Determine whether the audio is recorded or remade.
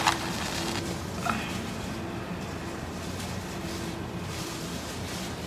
remade